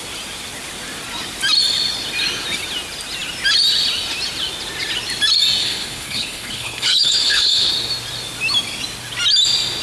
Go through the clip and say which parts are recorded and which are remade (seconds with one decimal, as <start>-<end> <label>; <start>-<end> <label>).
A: 0.0-5.6 recorded; 5.6-7.7 remade; 7.7-9.8 recorded

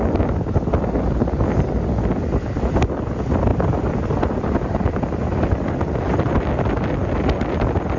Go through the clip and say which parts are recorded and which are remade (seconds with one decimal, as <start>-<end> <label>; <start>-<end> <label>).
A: 0.0-3.5 recorded; 3.5-6.5 remade; 6.5-8.0 recorded

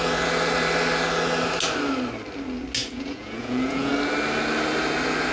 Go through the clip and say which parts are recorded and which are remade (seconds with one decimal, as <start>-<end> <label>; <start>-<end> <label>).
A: 0.0-2.8 recorded; 2.8-3.9 remade; 3.9-5.3 recorded

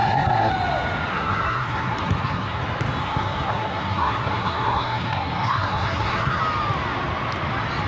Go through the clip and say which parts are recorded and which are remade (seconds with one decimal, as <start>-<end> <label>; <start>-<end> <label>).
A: 0.0-0.5 remade; 0.5-1.1 recorded; 1.1-2.6 remade; 2.6-3.0 recorded; 3.0-6.4 remade; 6.4-7.9 recorded